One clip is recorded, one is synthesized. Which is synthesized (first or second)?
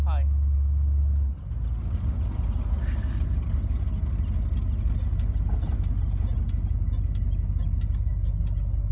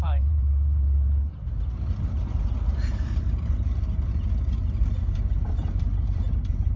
second